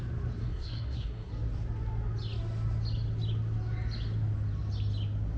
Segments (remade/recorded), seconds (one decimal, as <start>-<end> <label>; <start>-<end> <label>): 0.0-0.4 recorded; 0.4-1.3 remade; 1.3-5.4 recorded